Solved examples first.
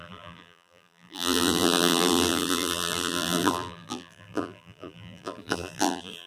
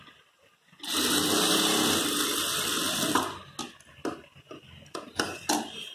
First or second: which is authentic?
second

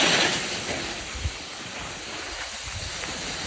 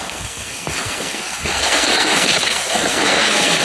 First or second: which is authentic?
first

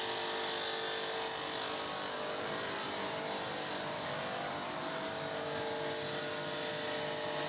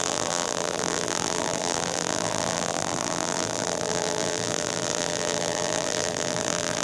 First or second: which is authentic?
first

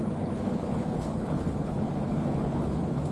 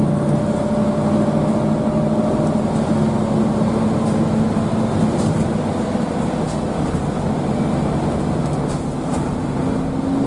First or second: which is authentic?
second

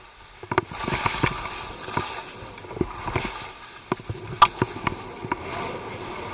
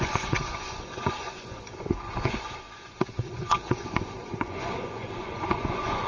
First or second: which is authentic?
first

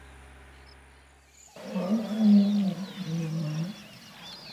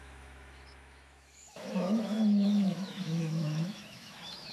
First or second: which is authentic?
first